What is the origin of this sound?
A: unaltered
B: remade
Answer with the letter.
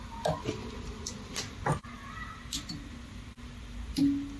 A